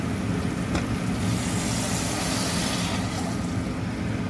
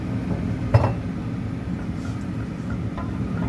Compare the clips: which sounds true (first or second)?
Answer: first